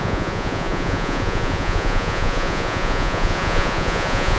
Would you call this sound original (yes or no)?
no